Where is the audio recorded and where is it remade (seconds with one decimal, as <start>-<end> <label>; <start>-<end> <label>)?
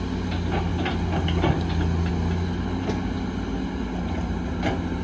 0.0-5.0 recorded